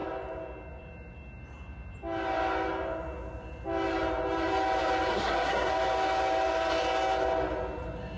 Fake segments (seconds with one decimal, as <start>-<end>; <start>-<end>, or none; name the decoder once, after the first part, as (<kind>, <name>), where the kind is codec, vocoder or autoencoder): 5.1-5.7 (codec, SNAC)